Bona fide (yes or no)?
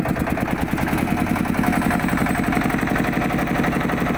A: yes